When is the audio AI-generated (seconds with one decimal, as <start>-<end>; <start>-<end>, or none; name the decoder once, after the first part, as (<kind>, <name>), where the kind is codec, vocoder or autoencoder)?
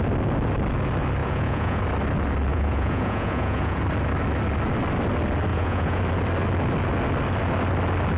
1.2-1.8 (vocoder, Vocos); 2.5-3.8; 5.5-6.0